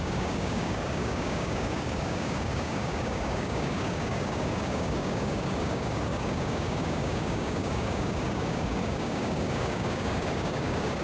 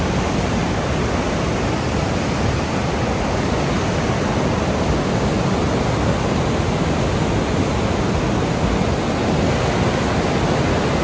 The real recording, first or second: second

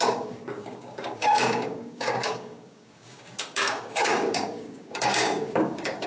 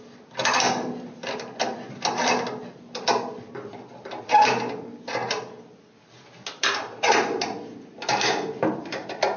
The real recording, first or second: second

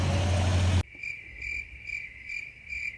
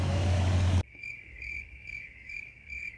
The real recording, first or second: first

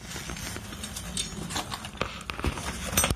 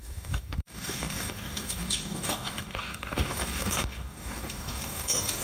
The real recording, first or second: first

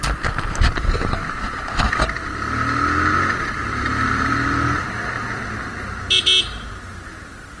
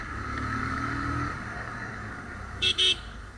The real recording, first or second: first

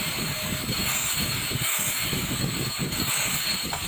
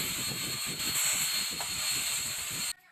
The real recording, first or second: second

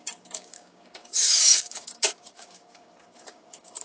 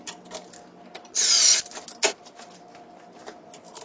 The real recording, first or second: second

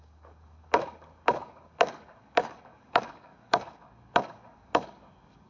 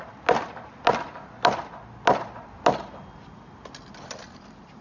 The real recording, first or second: second